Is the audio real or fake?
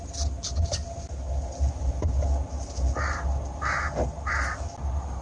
real